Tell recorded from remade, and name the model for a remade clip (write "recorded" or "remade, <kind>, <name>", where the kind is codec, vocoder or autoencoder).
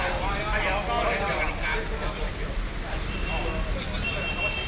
recorded